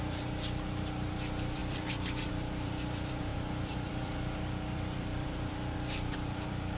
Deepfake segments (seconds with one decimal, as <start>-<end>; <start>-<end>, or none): 0.0-6.8